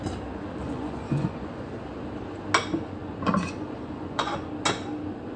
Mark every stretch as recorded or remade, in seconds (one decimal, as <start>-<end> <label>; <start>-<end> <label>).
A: 0.0-0.6 recorded; 0.6-1.7 remade; 1.7-3.0 recorded; 3.0-4.5 remade; 4.5-5.4 recorded